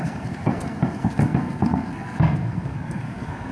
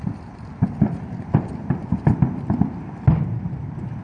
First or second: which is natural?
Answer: second